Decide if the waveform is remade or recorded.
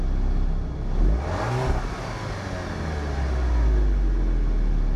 recorded